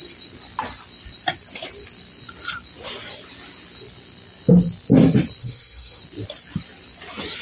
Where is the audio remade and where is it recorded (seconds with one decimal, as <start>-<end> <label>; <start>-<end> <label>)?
0.0-5.4 recorded; 5.4-6.0 remade; 6.0-7.4 recorded